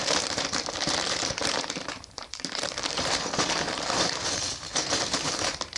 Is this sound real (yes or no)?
no